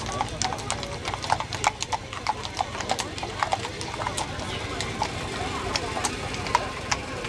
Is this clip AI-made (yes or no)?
no